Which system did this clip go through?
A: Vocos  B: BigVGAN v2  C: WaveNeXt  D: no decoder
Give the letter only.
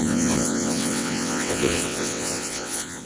C